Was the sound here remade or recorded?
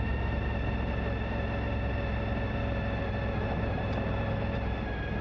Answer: recorded